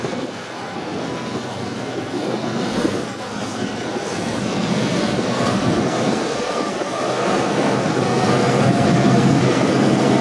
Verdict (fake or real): fake